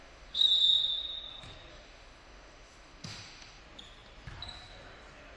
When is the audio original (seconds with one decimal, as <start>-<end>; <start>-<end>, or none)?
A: 0.5-1.7; 3.6-5.4